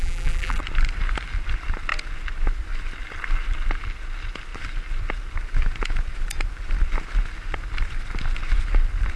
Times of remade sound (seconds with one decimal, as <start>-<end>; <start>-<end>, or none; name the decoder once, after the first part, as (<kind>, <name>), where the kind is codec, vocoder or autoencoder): 0.0-0.6 (vocoder, BigVGAN v2)